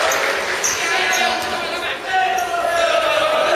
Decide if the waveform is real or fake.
real